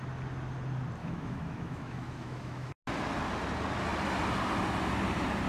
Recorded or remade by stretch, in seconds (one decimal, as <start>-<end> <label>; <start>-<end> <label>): 0.0-1.0 recorded; 1.0-2.7 remade; 2.7-5.5 recorded